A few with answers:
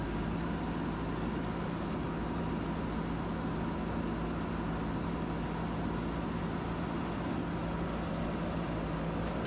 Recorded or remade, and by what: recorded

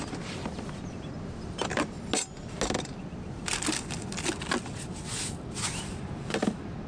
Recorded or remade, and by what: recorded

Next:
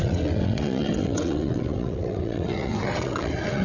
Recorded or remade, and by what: remade, vocoder, WaveNeXt